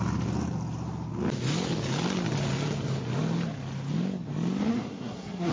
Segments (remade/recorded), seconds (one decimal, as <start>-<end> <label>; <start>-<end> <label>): 0.0-4.7 recorded; 4.7-5.5 remade